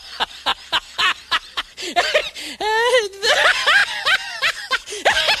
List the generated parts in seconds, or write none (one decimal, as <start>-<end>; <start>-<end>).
none